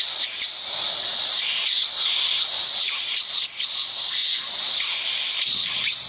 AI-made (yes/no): no